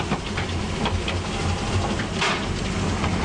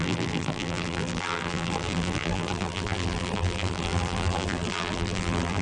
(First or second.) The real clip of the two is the first